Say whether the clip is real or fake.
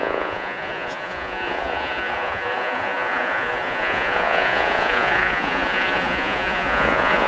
fake